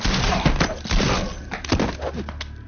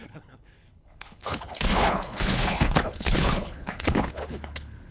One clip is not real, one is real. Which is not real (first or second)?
second